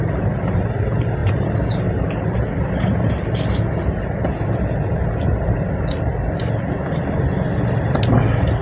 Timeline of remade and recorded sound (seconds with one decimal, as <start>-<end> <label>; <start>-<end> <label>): 0.0-8.6 recorded